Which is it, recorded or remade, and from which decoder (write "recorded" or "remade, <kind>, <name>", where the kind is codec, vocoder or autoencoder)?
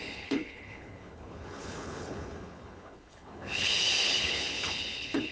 remade, codec, HILCodec